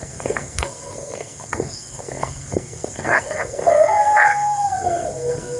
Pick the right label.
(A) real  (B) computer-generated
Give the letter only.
B